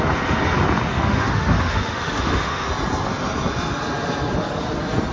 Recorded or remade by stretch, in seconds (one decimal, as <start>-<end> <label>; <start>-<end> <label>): 0.0-0.9 recorded; 0.9-2.7 remade; 2.7-5.1 recorded